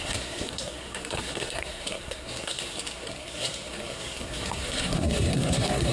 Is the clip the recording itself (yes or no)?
no